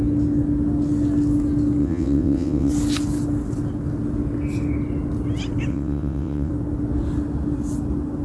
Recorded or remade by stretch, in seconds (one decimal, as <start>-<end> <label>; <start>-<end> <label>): 0.0-1.8 recorded; 1.8-2.7 remade; 2.7-5.7 recorded; 5.7-6.5 remade; 6.5-8.2 recorded